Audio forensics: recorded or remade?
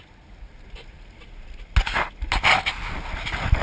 recorded